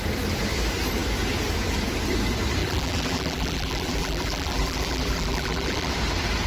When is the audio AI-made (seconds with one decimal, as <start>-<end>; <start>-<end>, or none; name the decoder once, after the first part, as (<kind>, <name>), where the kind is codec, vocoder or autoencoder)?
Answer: 2.6-5.9 (vocoder, BigVGAN v2)